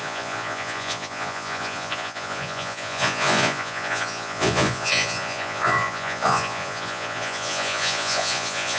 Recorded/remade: remade